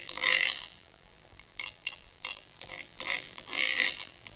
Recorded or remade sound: remade